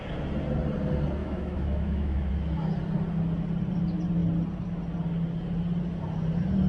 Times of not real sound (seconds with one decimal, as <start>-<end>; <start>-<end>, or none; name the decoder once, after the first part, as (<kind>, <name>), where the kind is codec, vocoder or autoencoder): 1.2-2.3 (autoencoder, DAC-VAE)